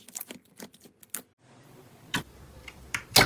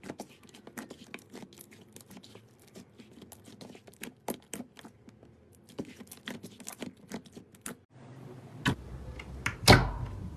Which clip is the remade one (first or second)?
first